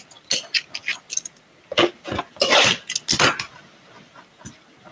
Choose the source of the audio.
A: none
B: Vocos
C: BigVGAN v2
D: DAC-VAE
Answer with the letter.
A